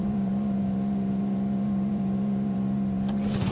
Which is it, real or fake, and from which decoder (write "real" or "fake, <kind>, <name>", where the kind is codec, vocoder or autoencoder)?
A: fake, vocoder, BigVGAN v2